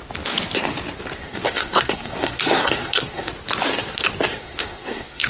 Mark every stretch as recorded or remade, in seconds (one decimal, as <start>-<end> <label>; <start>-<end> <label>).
0.0-1.2 recorded; 1.2-3.3 remade; 3.3-4.3 recorded; 4.3-5.3 remade